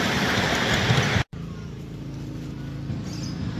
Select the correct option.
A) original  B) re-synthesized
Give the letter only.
A